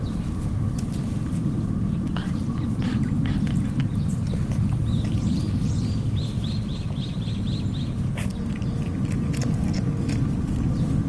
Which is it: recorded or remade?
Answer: recorded